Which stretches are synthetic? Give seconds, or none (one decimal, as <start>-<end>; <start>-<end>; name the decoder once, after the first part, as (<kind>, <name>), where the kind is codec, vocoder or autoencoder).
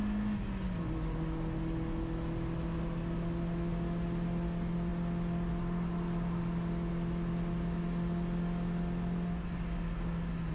none